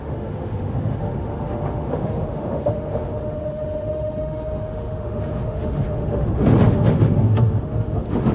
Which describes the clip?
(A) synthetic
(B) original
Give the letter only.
A